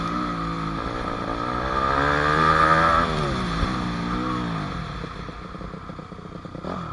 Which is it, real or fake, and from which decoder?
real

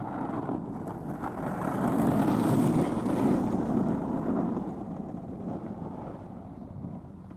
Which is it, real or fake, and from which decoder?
real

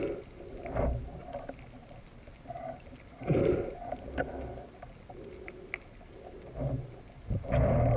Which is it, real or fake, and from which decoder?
real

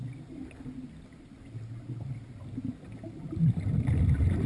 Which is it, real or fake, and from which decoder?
real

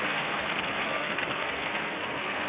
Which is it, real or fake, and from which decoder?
fake, codec, SNAC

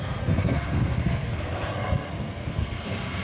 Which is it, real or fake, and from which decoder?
fake, codec, SNAC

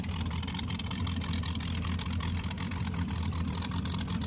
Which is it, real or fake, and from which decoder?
real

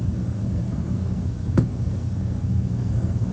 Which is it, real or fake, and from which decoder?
fake, codec, SNAC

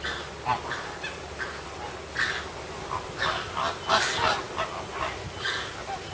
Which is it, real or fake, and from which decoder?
real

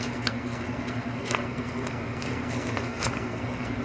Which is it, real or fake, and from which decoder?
fake, codec, SNAC